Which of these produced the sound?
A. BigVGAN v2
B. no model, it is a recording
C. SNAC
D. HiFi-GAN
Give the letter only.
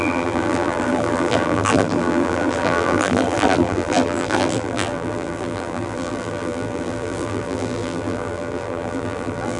A